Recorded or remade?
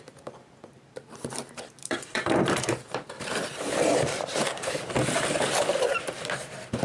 remade